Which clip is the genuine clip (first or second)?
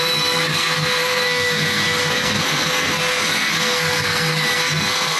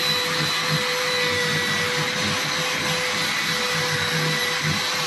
second